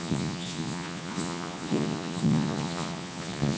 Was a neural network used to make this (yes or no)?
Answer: yes